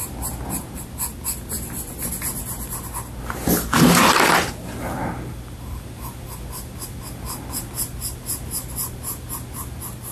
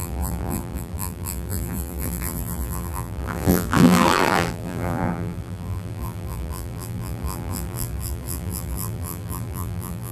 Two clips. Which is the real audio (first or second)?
first